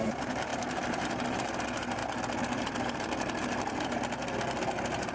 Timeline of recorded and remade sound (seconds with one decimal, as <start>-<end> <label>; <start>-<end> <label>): 0.0-0.5 recorded; 0.5-1.1 remade; 1.1-5.1 recorded